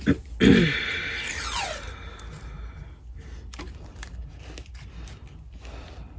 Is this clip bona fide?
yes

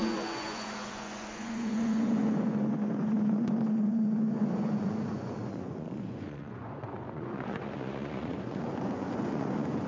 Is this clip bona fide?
no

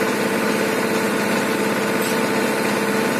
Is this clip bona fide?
yes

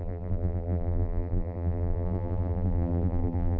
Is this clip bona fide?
no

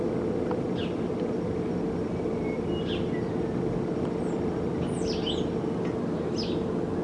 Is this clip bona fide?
yes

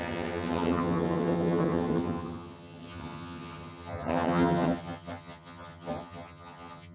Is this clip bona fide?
no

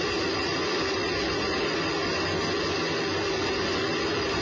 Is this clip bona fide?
yes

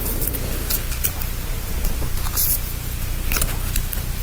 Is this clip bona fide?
yes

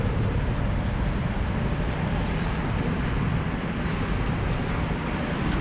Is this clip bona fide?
yes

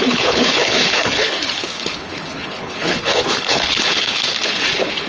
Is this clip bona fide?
no